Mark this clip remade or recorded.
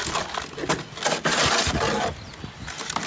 recorded